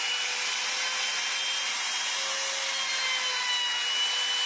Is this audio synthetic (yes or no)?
no